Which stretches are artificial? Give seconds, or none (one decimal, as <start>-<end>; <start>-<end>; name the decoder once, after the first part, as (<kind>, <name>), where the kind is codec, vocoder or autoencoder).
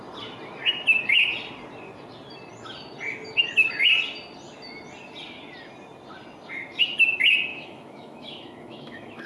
7.5-9.3 (autoencoder, DAC-VAE)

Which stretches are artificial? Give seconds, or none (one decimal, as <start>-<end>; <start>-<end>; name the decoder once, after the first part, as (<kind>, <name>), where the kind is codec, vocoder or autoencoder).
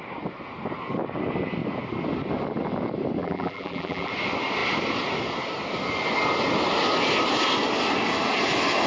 3.2-4.1 (vocoder, BigVGAN v2)